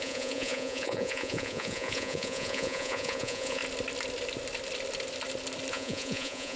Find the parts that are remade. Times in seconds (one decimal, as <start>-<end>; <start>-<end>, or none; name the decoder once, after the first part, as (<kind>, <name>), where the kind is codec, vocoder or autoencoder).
0.0-3.6 (vocoder, Vocos); 5.7-6.6